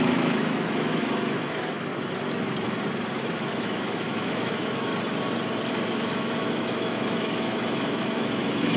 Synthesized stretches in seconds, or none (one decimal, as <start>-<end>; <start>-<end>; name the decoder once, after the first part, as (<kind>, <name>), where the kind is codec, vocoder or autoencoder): 0.0-1.9 (autoencoder, DAC-VAE); 3.2-4.9; 5.7-8.8